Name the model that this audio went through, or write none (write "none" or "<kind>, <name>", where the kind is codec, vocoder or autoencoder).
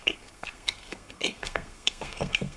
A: codec, SNAC